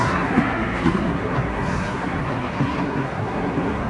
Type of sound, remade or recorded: remade